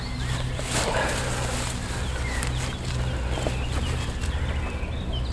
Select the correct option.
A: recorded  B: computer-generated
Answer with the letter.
A